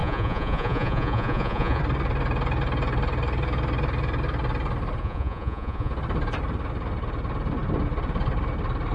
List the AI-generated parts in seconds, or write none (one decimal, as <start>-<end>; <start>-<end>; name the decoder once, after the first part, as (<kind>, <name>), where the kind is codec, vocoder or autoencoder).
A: 0.0-1.8 (vocoder, Vocos); 5.0-5.9